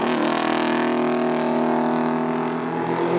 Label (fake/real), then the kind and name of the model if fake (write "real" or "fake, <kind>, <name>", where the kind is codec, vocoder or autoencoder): real